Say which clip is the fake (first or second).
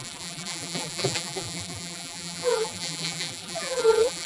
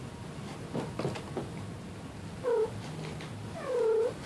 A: first